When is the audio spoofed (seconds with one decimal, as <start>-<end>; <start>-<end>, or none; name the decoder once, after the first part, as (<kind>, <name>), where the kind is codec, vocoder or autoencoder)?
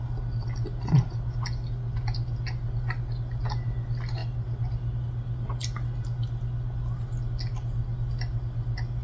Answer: none